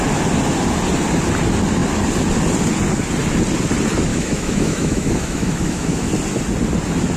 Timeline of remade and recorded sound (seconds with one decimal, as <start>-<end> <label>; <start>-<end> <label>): 0.0-4.1 recorded; 4.1-6.1 remade; 6.1-7.2 recorded